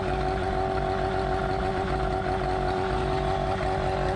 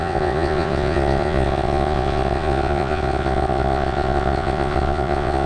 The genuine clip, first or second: first